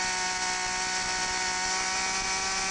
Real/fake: real